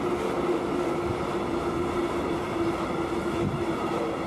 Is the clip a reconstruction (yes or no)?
no